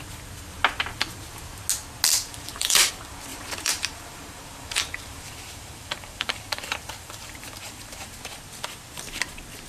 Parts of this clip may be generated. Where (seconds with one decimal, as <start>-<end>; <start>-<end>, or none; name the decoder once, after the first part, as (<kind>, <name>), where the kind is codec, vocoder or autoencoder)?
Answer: 2.1-2.9 (vocoder, BigVGAN v2); 3.3-8.2